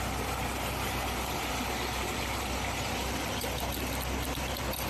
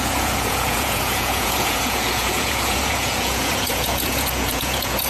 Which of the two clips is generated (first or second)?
second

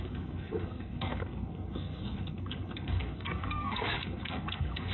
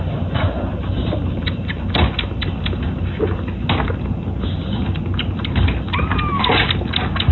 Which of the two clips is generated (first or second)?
first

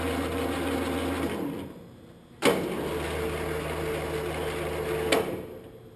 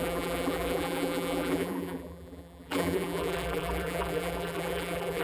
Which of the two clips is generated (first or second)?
second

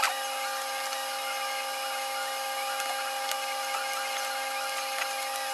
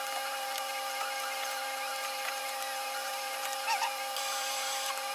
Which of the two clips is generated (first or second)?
second